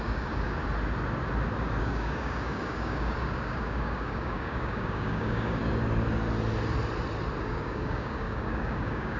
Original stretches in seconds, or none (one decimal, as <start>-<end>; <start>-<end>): 0.6-1.8; 5.6-7.4